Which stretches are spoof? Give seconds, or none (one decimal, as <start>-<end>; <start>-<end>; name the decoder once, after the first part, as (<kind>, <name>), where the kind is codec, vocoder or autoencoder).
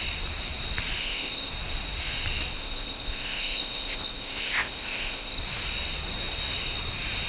1.0-1.5 (codec, ZipCodec); 2.6-5.4